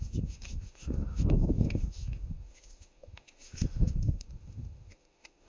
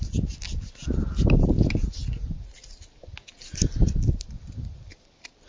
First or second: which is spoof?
first